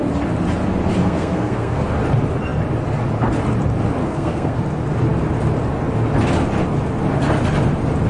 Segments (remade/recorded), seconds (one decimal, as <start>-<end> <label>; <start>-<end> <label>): 0.0-1.0 recorded; 1.0-1.9 remade; 1.9-4.0 recorded; 4.0-4.6 remade; 4.6-8.1 recorded

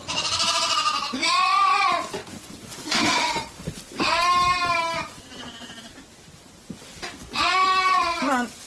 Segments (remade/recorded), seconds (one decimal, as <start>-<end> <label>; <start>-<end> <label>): 0.0-1.2 recorded; 1.2-1.7 remade; 1.7-2.2 recorded; 2.2-3.3 remade; 3.3-7.2 recorded; 7.2-8.2 remade; 8.2-8.7 recorded

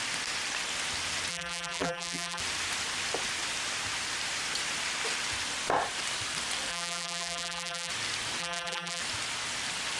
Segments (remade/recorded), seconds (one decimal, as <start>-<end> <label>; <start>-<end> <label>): 0.0-1.3 recorded; 1.3-2.4 remade; 2.4-6.7 recorded; 6.7-7.9 remade; 7.9-8.4 recorded; 8.4-9.0 remade; 9.0-10.0 recorded

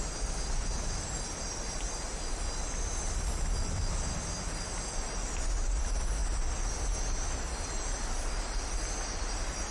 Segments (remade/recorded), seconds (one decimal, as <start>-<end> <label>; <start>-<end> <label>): 0.0-9.7 recorded

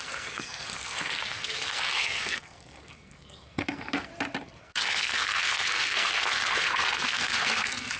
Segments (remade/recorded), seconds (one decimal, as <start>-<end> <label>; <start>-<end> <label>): 0.0-4.1 remade; 4.1-4.6 recorded; 4.6-8.0 remade

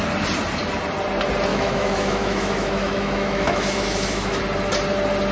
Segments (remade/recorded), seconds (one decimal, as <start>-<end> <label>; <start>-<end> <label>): 0.0-1.5 recorded; 1.5-4.4 remade; 4.4-5.3 recorded

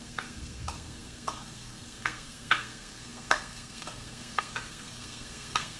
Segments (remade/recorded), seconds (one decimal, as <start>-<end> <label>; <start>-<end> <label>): 0.0-5.8 remade

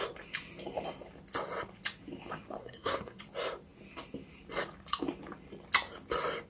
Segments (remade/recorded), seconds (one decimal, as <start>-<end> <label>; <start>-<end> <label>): 0.0-2.6 recorded; 2.6-3.2 remade; 3.2-6.5 recorded